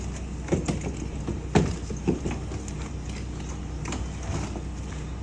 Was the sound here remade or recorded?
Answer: recorded